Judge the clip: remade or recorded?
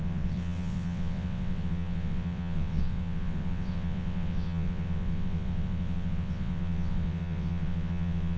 remade